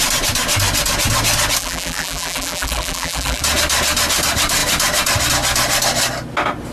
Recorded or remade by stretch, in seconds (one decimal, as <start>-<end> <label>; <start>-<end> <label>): 0.0-1.6 recorded; 1.6-3.4 remade; 3.4-6.7 recorded